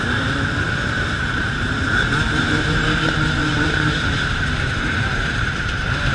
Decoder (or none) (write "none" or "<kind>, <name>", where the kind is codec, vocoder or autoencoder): vocoder, BigVGAN v2